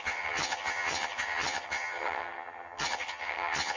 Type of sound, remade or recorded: remade